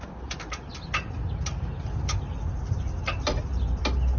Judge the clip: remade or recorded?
recorded